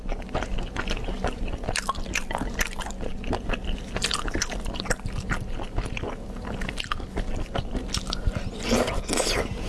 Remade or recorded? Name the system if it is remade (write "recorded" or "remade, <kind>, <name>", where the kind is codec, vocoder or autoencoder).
recorded